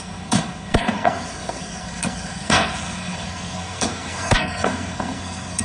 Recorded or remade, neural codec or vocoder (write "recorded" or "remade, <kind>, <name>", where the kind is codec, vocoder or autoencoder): remade, codec, SNAC